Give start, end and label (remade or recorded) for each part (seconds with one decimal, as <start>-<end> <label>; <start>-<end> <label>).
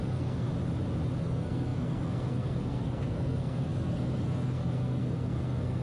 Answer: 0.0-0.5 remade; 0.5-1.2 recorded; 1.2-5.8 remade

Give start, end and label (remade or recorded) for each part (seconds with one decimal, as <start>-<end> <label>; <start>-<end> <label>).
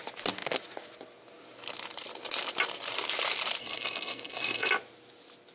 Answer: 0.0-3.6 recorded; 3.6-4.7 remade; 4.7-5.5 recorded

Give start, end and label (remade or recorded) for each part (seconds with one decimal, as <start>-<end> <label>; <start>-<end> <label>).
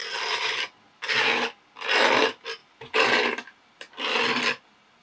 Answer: 0.0-5.0 recorded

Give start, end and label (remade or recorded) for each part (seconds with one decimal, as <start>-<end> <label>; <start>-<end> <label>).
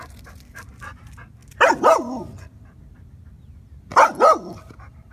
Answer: 0.0-5.1 recorded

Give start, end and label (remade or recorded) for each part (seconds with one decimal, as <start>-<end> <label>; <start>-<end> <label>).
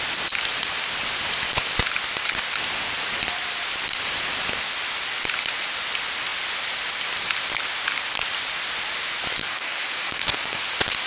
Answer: 0.0-9.4 recorded; 9.4-10.6 remade; 10.6-11.1 recorded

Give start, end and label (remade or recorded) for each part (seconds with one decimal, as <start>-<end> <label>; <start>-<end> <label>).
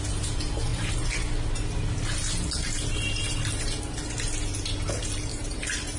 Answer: 0.0-5.3 recorded; 5.3-6.0 remade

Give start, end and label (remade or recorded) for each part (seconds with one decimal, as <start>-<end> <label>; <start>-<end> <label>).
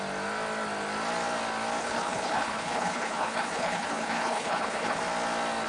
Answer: 0.0-1.8 recorded; 1.8-5.0 remade; 5.0-5.7 recorded